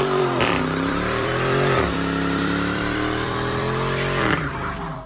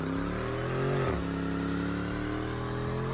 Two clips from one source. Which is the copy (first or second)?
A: first